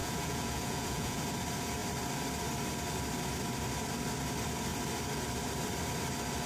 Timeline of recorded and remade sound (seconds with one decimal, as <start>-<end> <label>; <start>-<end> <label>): 0.0-1.2 remade; 1.2-6.5 recorded